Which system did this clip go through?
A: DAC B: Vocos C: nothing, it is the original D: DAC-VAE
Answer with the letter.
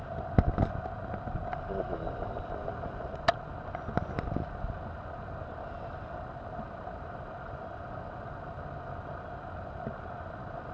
C